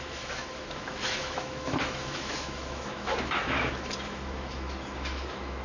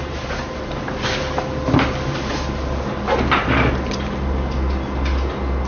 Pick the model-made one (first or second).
first